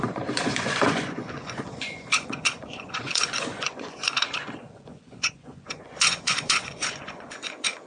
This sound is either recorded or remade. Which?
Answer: remade